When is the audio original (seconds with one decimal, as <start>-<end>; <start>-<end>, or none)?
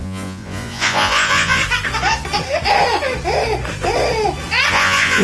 1.6-4.7